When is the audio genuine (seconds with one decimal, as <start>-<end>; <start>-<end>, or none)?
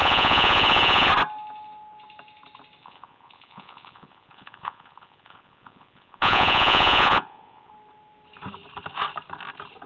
1.1-2.8; 7.7-9.9